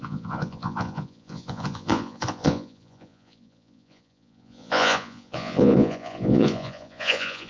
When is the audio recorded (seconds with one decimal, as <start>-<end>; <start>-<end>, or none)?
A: none